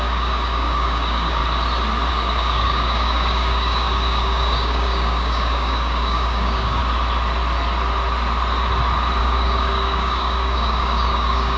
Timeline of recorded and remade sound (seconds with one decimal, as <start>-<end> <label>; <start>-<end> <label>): 0.0-1.4 remade; 1.4-2.1 recorded; 2.1-6.8 remade; 6.8-9.2 recorded; 9.2-11.6 remade

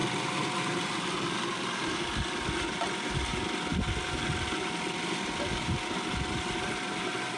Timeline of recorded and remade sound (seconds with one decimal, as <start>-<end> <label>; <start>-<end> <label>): 0.0-7.4 recorded

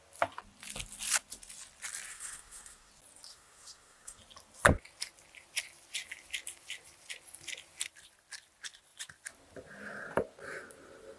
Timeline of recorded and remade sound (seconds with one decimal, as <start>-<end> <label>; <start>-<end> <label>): 0.0-2.1 recorded; 2.1-2.9 remade; 2.9-3.3 recorded; 3.3-4.2 remade; 4.2-11.2 recorded

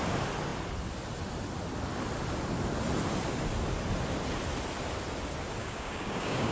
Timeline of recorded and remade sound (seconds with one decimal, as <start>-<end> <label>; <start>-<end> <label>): 0.0-5.6 recorded; 5.6-6.5 remade

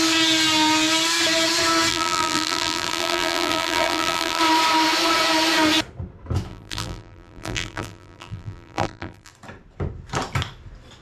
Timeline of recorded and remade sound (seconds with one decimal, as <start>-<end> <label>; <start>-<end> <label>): 0.0-1.9 recorded; 1.9-4.4 remade; 4.4-6.5 recorded; 6.5-9.3 remade; 9.3-11.0 recorded